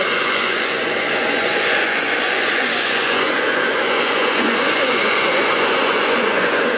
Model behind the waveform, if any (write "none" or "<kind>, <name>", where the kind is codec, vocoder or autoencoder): vocoder, Vocos